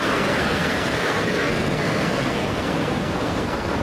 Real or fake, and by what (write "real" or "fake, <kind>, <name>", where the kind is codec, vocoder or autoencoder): fake, codec, SNAC